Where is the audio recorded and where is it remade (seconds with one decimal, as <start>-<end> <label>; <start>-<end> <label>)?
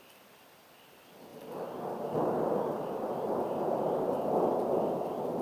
0.0-5.4 recorded